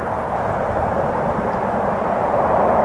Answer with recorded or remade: remade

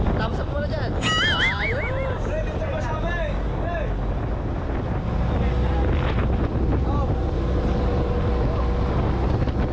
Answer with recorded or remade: recorded